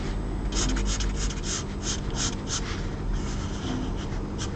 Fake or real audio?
real